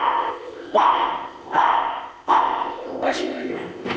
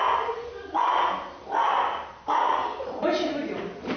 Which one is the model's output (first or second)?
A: first